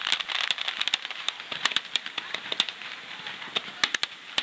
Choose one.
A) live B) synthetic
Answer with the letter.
A